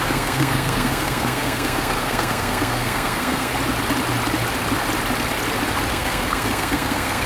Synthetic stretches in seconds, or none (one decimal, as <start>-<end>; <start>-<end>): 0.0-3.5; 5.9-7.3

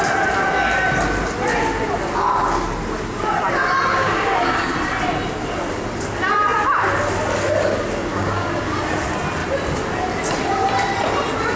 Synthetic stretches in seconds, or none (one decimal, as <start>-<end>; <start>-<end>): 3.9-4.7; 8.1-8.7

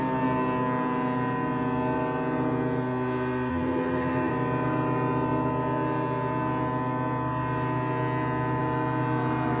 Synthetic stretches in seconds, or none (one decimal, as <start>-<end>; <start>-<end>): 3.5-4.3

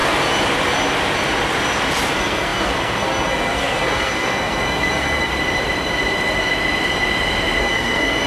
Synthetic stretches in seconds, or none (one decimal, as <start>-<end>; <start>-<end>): 2.1-5.3; 7.6-8.3

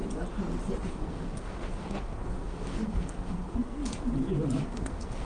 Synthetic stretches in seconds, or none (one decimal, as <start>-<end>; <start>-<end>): 0.9-3.8; 4.6-5.2